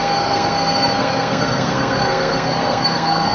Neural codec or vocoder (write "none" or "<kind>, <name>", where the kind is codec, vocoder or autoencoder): codec, SNAC